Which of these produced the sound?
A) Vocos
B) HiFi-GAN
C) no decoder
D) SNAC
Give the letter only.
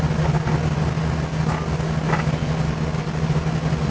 C